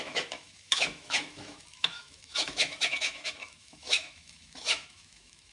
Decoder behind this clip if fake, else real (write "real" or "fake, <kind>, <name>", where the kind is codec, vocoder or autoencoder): fake, autoencoder, DAC-VAE